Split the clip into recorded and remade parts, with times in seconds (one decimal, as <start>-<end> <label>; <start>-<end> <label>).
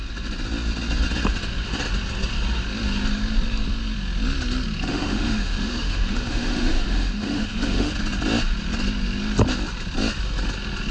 0.0-4.9 recorded; 4.9-7.9 remade; 7.9-10.9 recorded